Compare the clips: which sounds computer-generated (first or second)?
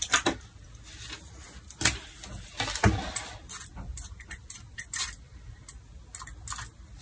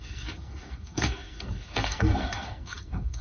second